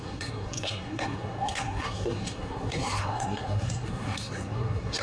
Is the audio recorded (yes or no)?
no